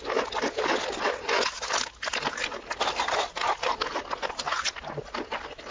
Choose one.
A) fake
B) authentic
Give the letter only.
B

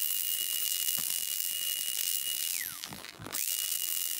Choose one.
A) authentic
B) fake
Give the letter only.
B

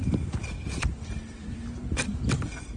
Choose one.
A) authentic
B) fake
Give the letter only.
A